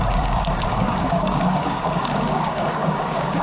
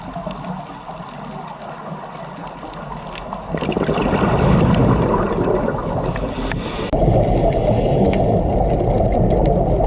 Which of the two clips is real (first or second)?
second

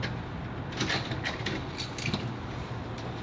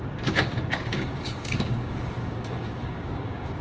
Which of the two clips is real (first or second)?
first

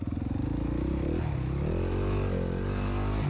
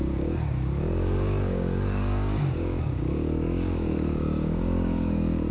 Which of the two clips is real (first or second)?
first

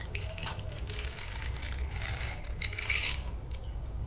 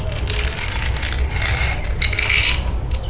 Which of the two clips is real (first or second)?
second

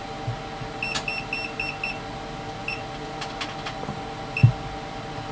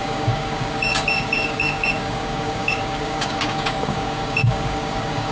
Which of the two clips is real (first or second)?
first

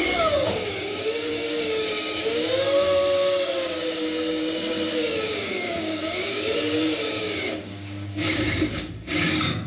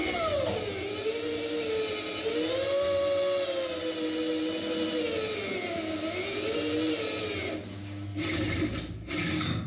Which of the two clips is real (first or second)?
second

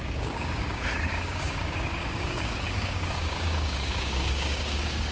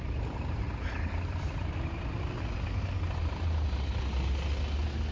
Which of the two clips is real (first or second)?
second